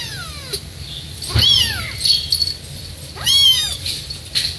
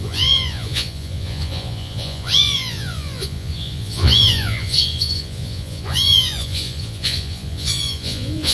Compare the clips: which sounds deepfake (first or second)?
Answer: second